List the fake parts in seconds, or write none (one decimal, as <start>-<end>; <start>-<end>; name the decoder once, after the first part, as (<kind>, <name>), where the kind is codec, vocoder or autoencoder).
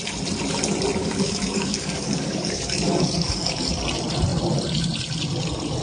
1.0-3.7 (codec, DAC)